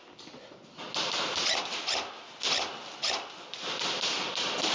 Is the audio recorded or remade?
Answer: recorded